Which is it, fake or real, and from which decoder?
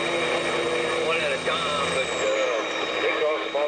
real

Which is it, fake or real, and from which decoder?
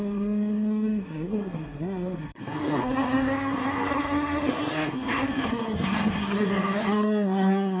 fake, codec, SNAC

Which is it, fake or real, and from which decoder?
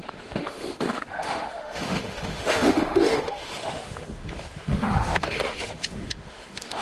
fake, autoencoder, DAC-VAE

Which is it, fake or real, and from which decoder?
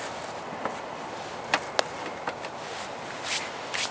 real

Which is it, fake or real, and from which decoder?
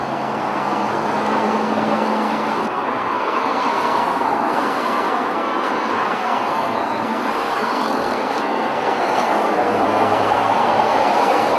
fake, codec, SNAC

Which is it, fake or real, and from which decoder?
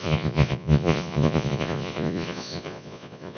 fake, vocoder, Vocos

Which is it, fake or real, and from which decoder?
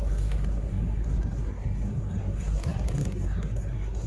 fake, codec, SNAC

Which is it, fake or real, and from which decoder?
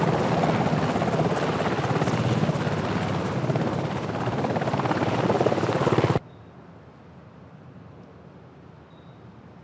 real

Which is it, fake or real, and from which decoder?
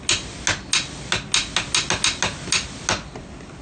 real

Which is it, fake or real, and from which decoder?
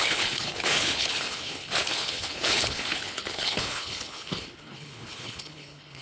fake, codec, HILCodec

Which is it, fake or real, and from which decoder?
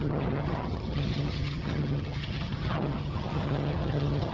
fake, vocoder, HiFi-GAN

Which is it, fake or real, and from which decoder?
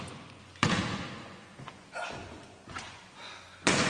fake, vocoder, Vocos